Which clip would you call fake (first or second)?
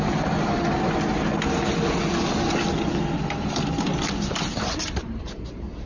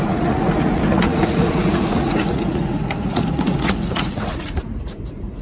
second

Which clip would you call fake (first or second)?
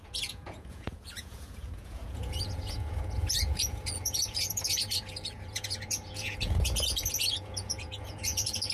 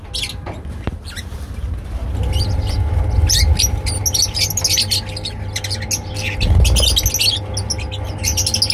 first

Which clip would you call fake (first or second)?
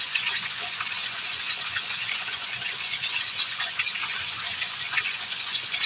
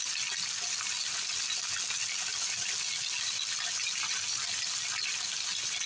first